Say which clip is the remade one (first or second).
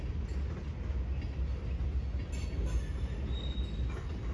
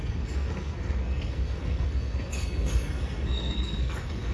second